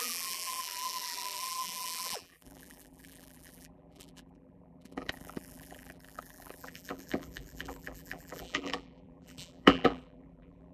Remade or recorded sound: remade